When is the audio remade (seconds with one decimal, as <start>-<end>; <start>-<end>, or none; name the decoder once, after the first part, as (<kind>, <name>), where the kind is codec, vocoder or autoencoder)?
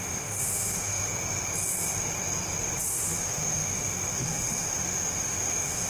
0.0-1.1 (autoencoder, DAC-VAE); 2.8-5.9